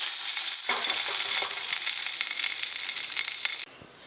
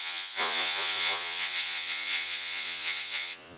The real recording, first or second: first